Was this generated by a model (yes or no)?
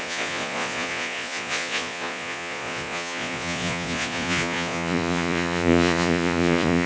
yes